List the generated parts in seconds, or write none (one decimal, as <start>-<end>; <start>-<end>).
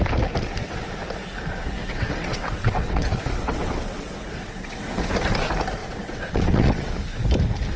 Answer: 1.8-5.1; 5.8-6.9